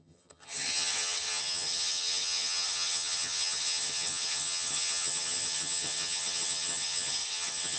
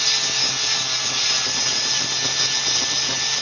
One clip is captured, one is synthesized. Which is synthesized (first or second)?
first